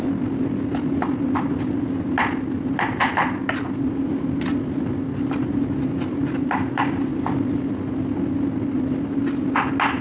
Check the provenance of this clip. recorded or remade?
recorded